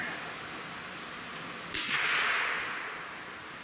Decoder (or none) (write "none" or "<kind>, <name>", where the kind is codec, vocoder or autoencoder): none